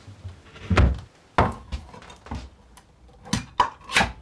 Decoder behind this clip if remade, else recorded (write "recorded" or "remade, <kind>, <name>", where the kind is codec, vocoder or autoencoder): recorded